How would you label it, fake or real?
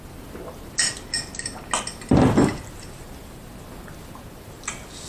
real